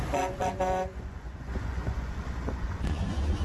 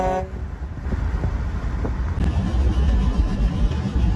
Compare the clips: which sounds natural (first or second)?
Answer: second